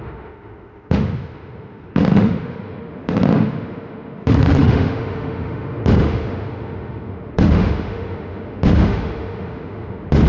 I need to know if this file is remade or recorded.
remade